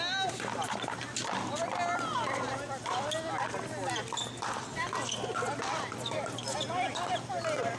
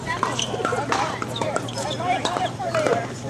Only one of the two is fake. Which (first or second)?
second